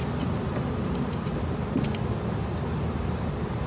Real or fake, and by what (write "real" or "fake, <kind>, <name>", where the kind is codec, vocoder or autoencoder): real